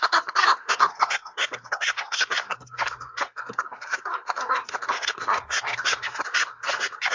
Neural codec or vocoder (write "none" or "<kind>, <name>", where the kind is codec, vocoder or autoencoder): codec, SNAC